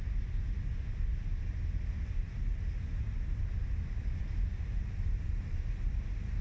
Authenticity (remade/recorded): recorded